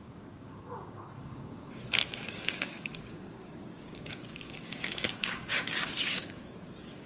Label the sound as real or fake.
fake